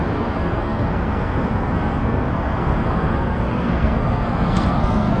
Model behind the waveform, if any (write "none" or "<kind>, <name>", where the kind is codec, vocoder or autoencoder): codec, SNAC